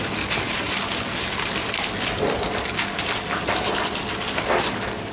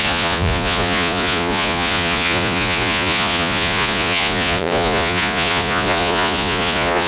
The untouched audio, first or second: first